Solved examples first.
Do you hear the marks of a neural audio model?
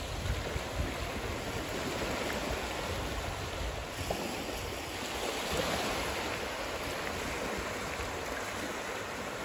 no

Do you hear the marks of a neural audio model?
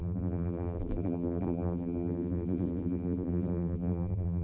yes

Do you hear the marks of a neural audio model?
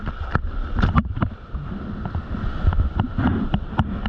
yes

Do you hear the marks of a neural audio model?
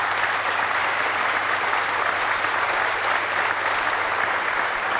yes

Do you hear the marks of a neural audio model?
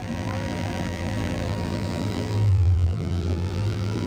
yes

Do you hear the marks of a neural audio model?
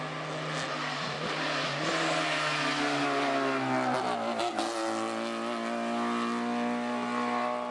no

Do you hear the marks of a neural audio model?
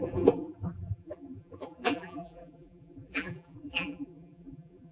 yes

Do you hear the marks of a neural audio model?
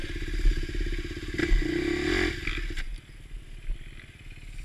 no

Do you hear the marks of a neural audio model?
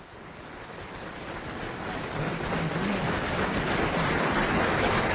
yes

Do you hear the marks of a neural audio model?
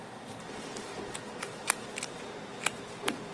yes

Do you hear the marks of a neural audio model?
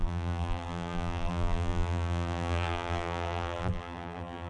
yes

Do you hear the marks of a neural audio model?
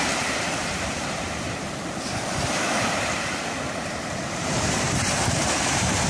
yes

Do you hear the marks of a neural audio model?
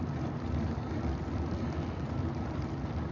no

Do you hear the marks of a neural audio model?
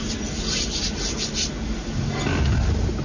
no